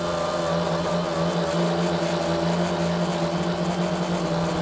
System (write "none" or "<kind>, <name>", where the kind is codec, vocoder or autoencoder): none